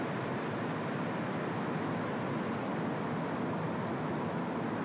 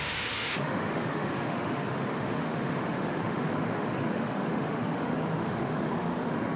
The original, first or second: first